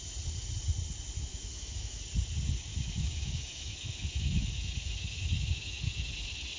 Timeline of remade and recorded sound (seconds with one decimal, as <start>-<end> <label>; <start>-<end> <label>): 0.0-1.3 recorded; 1.3-2.0 remade; 2.0-2.7 recorded; 2.7-6.1 remade; 6.1-6.6 recorded